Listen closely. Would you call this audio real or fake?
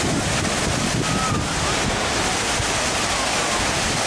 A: real